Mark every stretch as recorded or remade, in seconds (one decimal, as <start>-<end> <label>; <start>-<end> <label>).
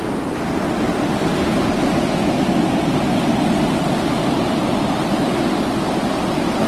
0.0-6.7 recorded